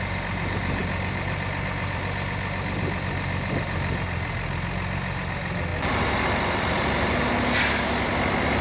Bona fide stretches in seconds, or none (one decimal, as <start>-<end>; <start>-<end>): 0.0-8.6